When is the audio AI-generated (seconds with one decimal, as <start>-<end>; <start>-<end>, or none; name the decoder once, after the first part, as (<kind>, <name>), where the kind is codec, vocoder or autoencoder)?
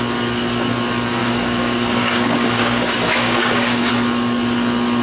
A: 1.2-3.9 (codec, DAC)